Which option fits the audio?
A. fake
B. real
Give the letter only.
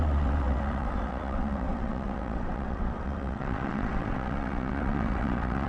A